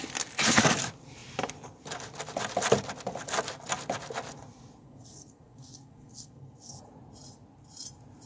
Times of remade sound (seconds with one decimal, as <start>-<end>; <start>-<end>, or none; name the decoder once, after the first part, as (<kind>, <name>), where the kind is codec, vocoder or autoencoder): 4.8-6.8 (codec, SNAC)